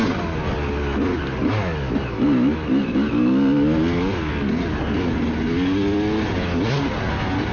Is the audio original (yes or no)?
yes